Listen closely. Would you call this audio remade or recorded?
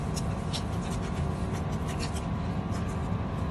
recorded